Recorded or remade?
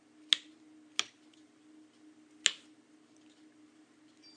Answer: recorded